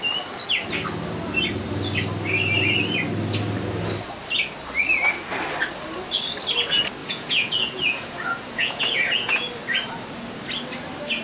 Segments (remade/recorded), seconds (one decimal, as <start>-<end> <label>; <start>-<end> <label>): 0.0-7.0 recorded; 7.0-9.5 remade; 9.5-11.2 recorded